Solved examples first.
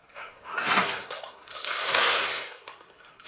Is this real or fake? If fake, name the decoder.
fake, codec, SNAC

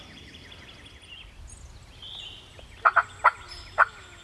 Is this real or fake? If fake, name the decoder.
real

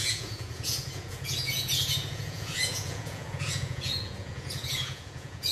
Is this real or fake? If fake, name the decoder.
fake, vocoder, Vocos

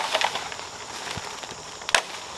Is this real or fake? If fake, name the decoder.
real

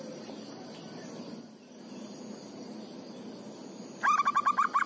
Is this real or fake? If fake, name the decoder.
real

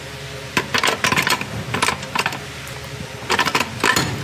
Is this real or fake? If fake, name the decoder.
real